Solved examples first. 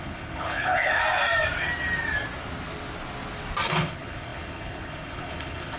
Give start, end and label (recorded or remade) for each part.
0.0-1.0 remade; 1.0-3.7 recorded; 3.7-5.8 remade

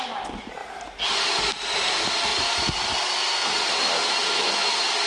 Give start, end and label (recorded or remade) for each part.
0.0-5.1 recorded